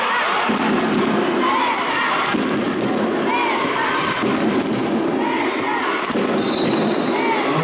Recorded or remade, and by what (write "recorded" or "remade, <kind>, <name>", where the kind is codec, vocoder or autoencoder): recorded